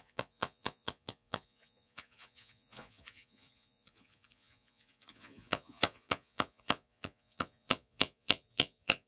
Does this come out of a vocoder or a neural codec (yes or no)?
yes